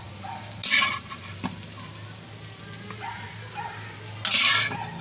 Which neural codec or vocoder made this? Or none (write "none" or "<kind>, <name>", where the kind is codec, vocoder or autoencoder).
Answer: none